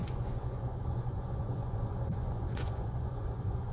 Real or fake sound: fake